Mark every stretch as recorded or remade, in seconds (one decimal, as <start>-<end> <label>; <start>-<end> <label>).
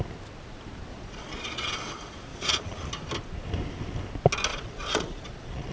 0.0-0.9 recorded; 0.9-1.7 remade; 1.7-2.3 recorded; 2.3-2.9 remade; 2.9-4.5 recorded; 4.5-5.7 remade